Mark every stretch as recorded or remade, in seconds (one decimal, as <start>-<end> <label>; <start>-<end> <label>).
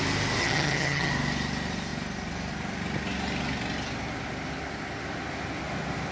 0.0-0.4 recorded; 0.4-1.1 remade; 1.1-6.1 recorded